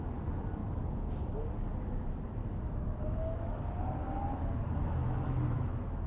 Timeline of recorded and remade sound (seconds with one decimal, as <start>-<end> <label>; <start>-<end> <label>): 0.0-2.4 recorded; 2.4-3.6 remade; 3.6-5.0 recorded; 5.0-6.1 remade